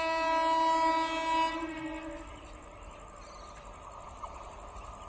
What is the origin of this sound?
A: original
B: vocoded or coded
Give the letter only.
A